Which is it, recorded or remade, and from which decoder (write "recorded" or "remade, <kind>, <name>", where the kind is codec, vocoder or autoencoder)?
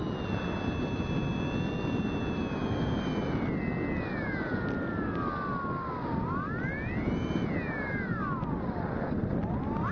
recorded